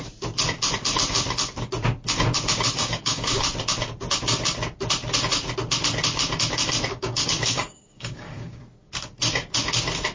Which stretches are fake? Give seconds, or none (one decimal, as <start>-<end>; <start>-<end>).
2.8-3.4; 6.9-8.6